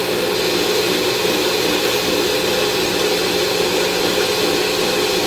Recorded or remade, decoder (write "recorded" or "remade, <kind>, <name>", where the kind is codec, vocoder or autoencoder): recorded